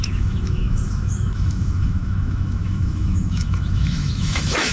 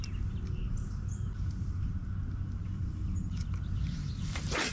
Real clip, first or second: second